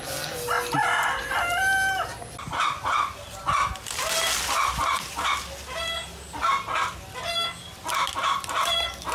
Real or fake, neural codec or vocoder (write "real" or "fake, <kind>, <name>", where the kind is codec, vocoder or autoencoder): real